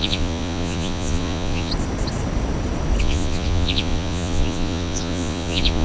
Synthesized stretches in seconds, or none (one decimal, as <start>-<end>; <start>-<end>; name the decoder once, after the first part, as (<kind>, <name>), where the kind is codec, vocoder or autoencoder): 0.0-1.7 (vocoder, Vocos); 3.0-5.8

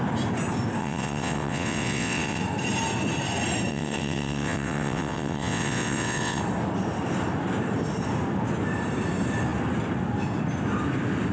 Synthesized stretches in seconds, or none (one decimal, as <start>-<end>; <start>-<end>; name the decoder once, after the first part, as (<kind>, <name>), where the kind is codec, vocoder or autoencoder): 0.8-2.4 (vocoder, WaveNeXt); 3.7-6.4

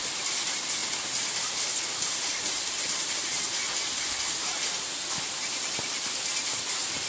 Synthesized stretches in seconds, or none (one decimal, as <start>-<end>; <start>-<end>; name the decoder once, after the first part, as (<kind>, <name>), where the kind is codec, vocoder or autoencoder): none